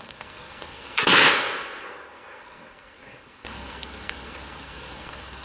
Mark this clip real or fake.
fake